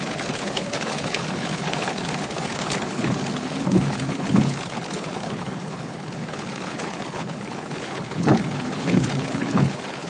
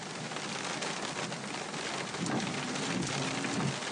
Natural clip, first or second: second